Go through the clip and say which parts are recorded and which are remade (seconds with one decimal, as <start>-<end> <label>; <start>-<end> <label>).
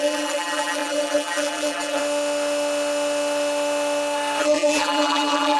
0.0-2.0 remade; 2.0-4.4 recorded; 4.4-5.6 remade